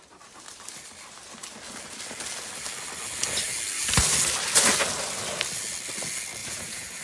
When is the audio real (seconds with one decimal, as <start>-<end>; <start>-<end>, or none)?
0.0-6.4